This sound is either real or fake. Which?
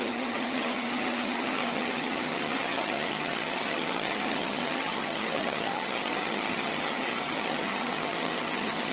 fake